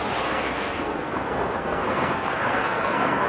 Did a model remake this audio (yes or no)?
yes